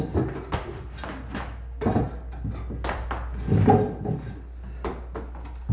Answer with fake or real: real